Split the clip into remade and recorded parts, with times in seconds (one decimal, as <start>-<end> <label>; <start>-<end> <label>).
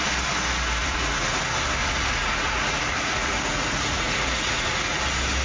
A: 0.0-0.8 recorded; 0.8-1.4 remade; 1.4-1.8 recorded; 1.8-5.0 remade; 5.0-5.4 recorded